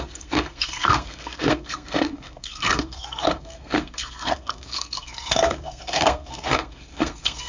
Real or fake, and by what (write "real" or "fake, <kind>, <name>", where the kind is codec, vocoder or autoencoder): fake, codec, SNAC